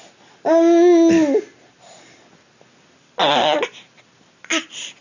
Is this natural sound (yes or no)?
yes